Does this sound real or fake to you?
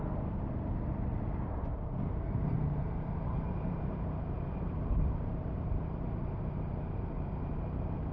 fake